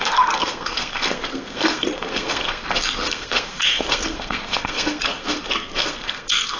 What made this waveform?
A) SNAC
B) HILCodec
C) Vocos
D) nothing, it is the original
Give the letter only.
A